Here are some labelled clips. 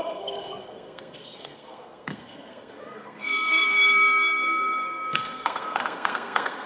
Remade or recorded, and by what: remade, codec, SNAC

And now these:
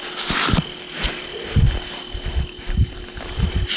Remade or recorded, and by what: recorded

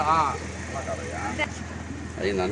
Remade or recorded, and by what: recorded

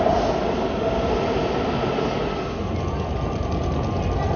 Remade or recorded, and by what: recorded